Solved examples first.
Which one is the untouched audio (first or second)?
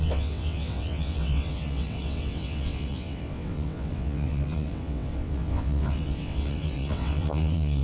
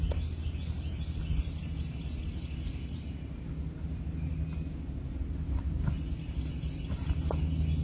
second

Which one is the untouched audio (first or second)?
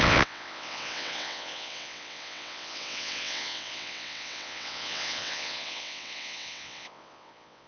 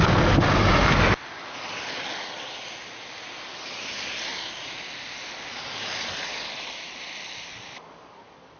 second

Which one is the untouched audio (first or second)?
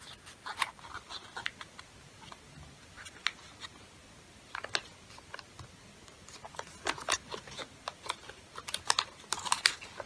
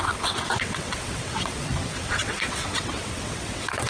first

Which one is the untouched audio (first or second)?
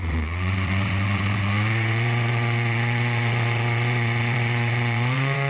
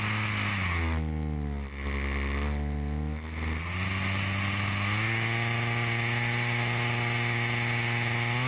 second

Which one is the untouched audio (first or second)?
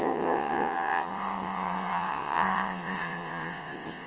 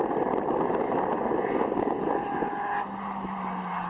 second